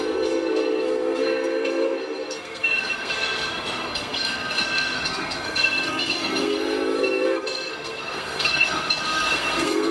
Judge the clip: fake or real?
fake